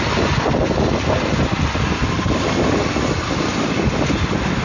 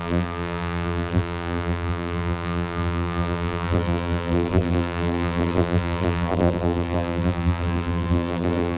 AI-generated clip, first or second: second